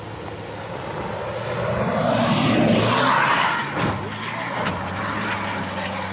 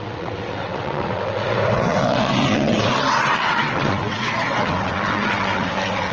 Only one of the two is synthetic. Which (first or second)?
second